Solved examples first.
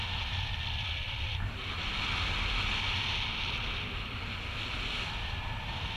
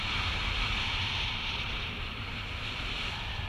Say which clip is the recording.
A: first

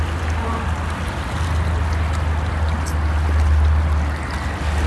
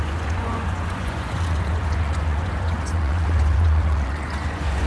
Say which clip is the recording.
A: first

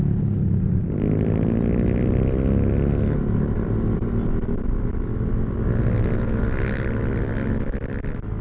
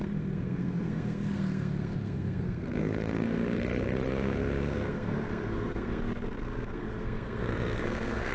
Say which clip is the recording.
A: first